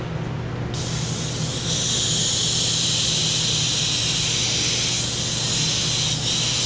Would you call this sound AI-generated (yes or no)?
no